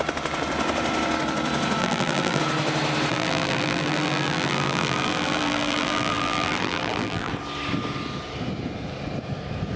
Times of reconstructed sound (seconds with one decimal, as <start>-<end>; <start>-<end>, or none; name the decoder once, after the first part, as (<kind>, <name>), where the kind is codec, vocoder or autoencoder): 1.8-2.4 (vocoder, BigVGAN v2); 3.1-7.3